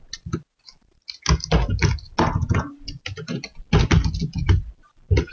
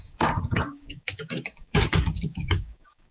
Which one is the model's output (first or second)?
second